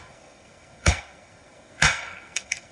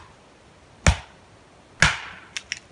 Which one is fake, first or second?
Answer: first